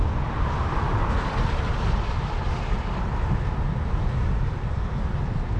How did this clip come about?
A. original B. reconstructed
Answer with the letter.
A